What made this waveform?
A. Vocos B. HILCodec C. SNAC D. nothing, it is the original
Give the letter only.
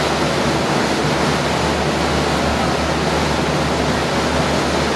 D